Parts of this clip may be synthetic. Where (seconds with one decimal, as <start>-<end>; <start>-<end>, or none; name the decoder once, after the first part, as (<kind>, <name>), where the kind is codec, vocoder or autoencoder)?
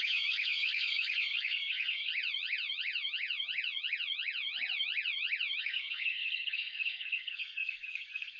0.0-2.1 (codec, SNAC); 5.6-8.4